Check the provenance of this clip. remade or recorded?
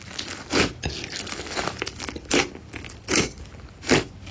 recorded